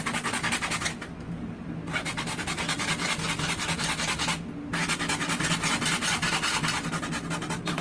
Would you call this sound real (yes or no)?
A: yes